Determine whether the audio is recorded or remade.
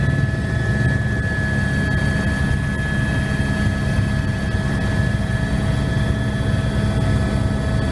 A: recorded